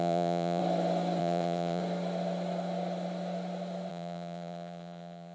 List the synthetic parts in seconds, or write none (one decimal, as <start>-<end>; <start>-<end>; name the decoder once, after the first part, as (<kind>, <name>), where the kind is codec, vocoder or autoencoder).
0.0-0.6 (vocoder, Vocos); 1.2-1.8; 3.9-5.3